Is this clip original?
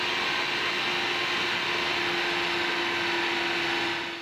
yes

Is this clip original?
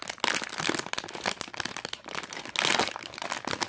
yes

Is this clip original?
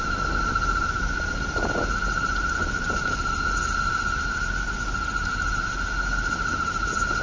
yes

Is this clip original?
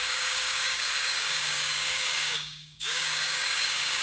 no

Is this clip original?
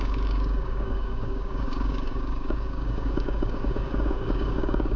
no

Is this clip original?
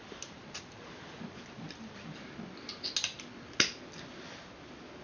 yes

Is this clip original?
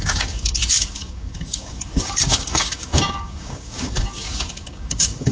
no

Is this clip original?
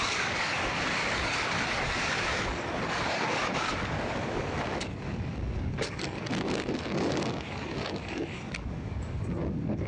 no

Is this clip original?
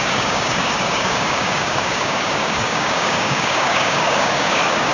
no